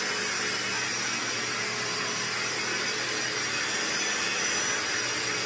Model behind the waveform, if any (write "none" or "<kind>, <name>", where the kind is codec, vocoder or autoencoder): none